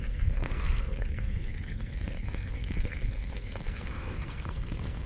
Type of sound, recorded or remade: remade